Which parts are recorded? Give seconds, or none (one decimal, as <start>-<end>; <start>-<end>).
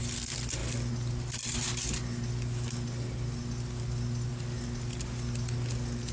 0.0-6.1